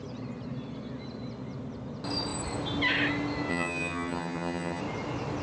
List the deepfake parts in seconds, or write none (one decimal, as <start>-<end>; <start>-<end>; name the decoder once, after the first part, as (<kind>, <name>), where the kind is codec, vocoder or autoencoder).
3.5-4.8 (vocoder, HiFi-GAN)